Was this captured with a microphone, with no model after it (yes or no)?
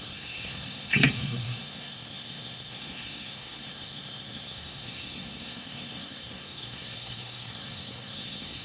no